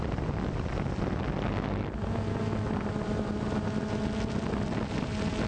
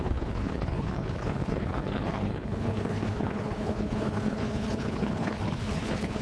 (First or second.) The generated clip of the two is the second